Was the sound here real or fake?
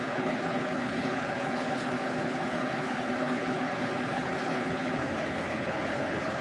fake